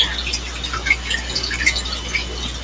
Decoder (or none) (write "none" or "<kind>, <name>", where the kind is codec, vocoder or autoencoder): none